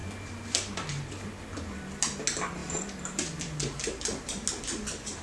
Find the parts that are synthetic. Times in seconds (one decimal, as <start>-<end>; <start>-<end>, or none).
none